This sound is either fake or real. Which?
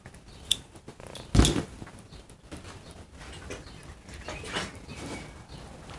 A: real